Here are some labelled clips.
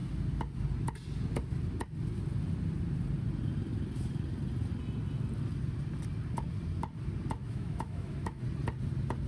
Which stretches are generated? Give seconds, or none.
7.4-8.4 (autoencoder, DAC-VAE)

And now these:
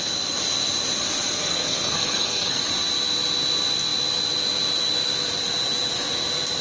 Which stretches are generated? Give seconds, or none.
1.4-2.6 (codec, SNAC)

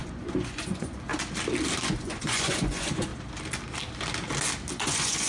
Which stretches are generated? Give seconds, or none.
0.0-1.1 (vocoder, Vocos); 2.0-3.1; 4.7-5.3

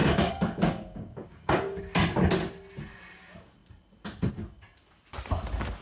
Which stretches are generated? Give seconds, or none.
0.0-1.8 (codec, DAC)

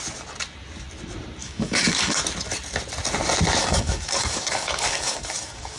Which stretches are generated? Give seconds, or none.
1.4-2.2 (codec, DAC); 3.6-5.8

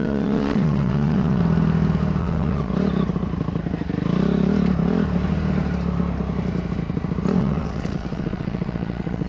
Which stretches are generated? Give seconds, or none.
0.0-1.4 (vocoder, WaveNeXt); 2.2-2.7; 7.4-9.3